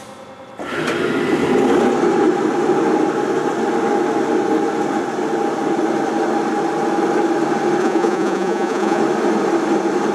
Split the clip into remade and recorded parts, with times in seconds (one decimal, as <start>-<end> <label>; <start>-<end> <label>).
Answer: 0.0-7.8 recorded; 7.8-9.0 remade; 9.0-10.1 recorded